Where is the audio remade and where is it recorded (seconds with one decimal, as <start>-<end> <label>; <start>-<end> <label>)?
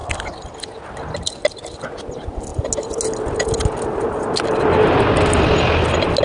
0.0-6.2 recorded